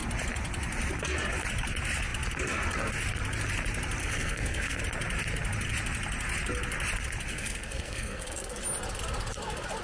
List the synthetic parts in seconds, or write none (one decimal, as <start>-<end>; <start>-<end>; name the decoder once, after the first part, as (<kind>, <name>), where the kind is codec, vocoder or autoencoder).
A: 4.0-4.8 (codec, SNAC); 7.3-8.6